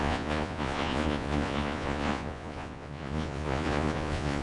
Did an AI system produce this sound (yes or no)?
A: yes